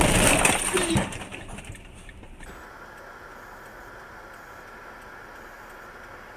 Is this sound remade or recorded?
recorded